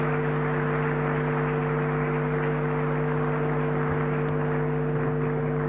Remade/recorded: recorded